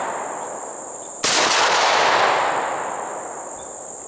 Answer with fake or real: real